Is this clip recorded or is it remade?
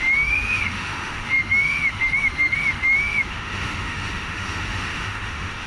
remade